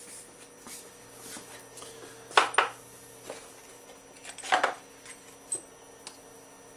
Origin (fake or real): real